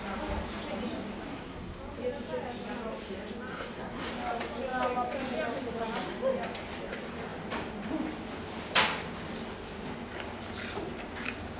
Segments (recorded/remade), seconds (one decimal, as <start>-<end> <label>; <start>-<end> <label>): 0.0-1.3 recorded; 1.3-1.8 remade; 1.8-3.5 recorded; 3.5-4.1 remade; 4.1-11.6 recorded